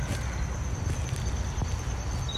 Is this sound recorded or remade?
recorded